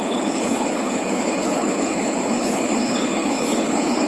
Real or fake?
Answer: fake